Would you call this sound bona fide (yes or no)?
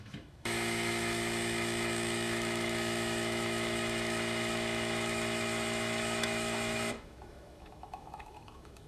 no